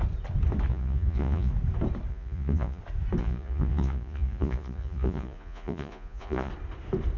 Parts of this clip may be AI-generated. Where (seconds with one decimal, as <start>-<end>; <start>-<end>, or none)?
0.7-1.5; 2.1-2.8; 3.2-6.5